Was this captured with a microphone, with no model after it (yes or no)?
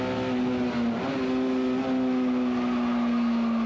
yes